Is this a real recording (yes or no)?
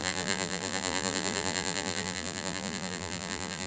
no